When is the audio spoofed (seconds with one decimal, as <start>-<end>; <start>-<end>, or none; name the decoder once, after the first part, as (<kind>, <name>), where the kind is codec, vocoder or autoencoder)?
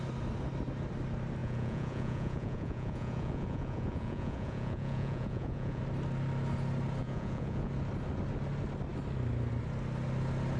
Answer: 1.4-5.8 (vocoder, Vocos); 7.0-7.7